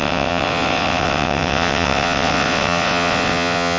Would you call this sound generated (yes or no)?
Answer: yes